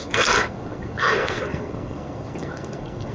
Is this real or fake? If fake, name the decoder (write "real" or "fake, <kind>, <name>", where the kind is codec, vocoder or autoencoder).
fake, codec, SNAC